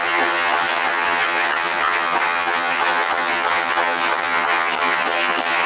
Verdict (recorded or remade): remade